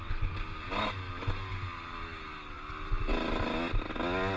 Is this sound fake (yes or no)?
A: no